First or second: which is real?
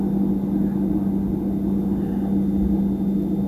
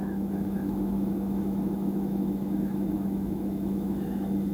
first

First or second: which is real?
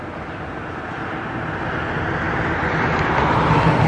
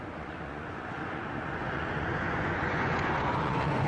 first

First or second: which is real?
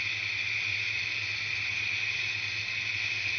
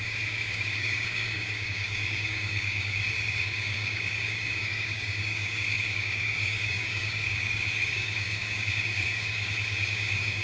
first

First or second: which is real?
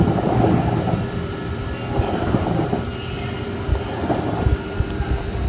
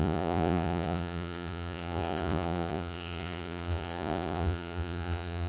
first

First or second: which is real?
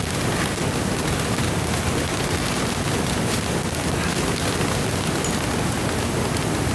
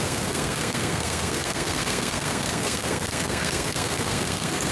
first